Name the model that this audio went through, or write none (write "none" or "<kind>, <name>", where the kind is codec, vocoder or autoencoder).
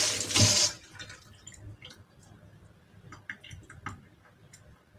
none